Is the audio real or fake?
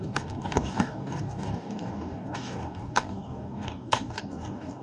fake